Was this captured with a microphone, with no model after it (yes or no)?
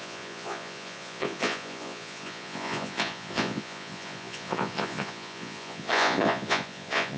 no